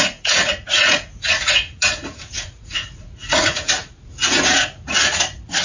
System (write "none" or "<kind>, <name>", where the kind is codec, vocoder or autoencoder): vocoder, Vocos